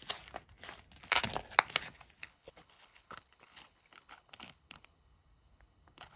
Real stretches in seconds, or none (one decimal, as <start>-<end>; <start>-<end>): 0.0-2.2